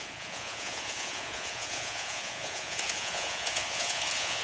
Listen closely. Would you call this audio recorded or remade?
remade